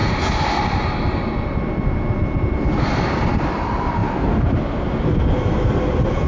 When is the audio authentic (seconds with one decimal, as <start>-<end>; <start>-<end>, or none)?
0.0-6.3